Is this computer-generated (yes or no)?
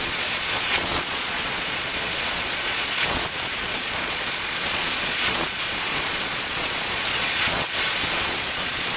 yes